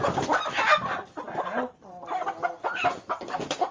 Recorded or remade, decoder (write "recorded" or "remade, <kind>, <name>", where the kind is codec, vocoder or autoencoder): recorded